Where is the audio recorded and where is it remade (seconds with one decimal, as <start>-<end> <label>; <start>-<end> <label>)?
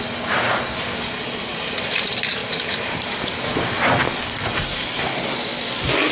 0.0-1.5 recorded; 1.5-2.0 remade; 2.0-2.4 recorded; 2.4-3.7 remade; 3.7-4.5 recorded; 4.5-5.0 remade; 5.0-6.1 recorded